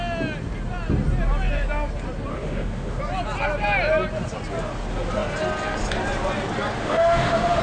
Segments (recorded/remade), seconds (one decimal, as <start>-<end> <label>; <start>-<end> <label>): 0.0-2.3 recorded; 2.3-3.0 remade; 3.0-6.8 recorded; 6.8-7.6 remade